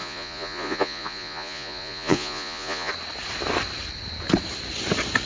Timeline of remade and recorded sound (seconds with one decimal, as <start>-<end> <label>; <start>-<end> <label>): 0.0-2.9 remade; 2.9-5.3 recorded